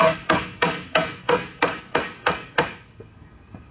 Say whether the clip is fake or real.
fake